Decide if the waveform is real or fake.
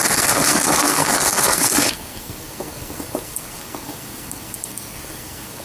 fake